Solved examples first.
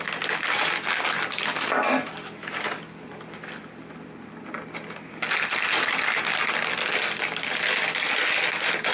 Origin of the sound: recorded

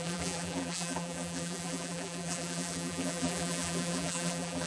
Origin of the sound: remade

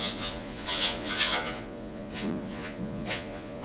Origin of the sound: remade